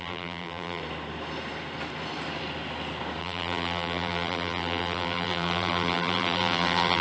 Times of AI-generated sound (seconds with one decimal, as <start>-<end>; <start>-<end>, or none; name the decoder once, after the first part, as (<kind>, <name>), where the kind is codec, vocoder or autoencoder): 0.0-0.8 (vocoder, BigVGAN v2); 3.2-7.0